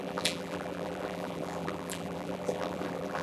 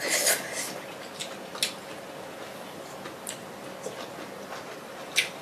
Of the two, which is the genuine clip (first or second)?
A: second